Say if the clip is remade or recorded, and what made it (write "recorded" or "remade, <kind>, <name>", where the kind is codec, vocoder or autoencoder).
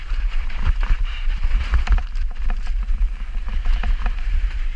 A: remade, vocoder, BigVGAN v2